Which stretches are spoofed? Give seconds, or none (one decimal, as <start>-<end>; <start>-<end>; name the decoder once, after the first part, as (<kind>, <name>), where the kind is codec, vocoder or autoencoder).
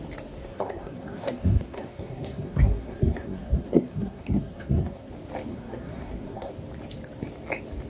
0.4-5.1 (codec, SNAC); 5.5-6.5